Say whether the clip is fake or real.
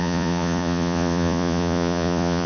fake